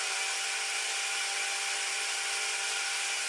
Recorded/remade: recorded